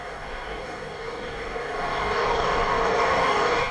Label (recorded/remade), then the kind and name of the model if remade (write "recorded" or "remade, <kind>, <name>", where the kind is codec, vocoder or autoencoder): remade, codec, DAC